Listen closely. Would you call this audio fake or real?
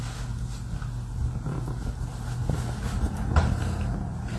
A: real